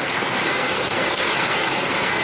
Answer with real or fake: fake